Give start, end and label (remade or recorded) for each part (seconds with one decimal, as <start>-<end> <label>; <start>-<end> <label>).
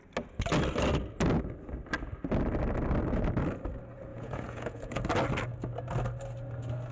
0.0-4.1 recorded; 4.1-5.0 remade; 5.0-6.9 recorded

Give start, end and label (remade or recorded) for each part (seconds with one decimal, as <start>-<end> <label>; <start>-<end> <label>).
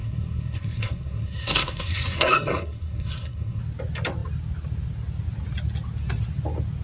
0.0-3.6 remade; 3.6-6.8 recorded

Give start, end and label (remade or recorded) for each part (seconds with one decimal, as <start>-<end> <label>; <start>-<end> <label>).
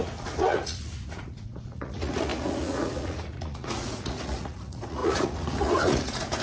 0.0-6.4 remade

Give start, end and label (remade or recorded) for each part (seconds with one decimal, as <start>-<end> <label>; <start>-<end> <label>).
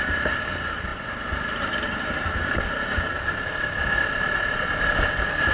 0.0-5.5 recorded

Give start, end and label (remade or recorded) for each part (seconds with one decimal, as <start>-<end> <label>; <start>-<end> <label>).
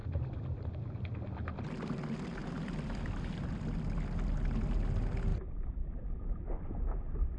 0.0-0.7 remade; 0.7-2.4 recorded; 2.4-3.5 remade; 3.5-5.3 recorded; 5.3-6.6 remade; 6.6-7.4 recorded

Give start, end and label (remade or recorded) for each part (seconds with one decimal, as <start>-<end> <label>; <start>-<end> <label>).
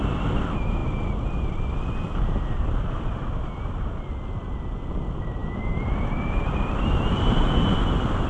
0.0-8.3 recorded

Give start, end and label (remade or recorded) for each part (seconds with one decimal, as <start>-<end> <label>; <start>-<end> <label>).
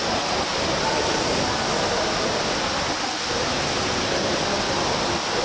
0.0-5.4 recorded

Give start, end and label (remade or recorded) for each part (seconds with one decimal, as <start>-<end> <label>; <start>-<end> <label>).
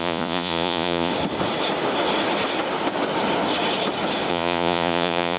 0.0-1.1 remade; 1.1-4.3 recorded; 4.3-5.4 remade